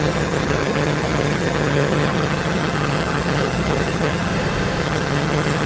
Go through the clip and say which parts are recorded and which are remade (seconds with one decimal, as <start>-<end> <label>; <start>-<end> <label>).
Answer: 0.0-4.3 remade; 4.3-4.8 recorded; 4.8-5.7 remade